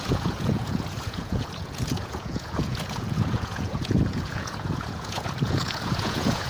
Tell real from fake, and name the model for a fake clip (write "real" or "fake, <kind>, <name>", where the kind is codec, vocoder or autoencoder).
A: fake, vocoder, Vocos